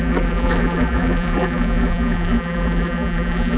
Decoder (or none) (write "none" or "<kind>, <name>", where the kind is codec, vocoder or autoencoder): vocoder, BigVGAN v2